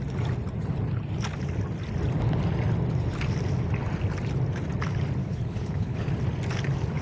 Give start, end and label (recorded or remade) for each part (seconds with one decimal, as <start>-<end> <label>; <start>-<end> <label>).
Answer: 0.0-5.2 recorded; 5.2-6.1 remade; 6.1-7.0 recorded